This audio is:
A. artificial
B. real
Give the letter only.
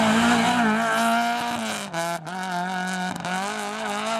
B